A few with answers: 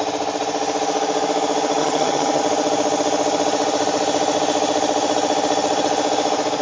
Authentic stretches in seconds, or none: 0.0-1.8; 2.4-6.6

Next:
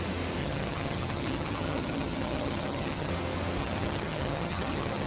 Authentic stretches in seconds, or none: 0.0-0.4; 3.1-3.6

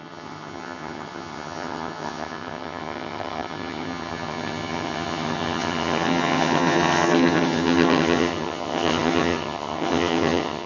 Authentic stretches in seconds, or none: none

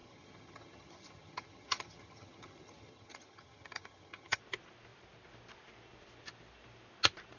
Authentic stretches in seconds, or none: 4.4-7.4